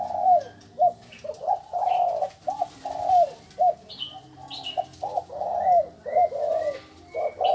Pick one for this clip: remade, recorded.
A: recorded